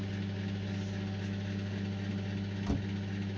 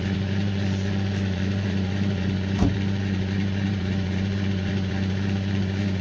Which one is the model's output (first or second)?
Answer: second